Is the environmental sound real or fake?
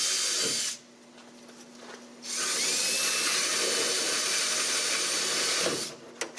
real